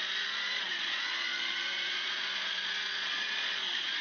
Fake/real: fake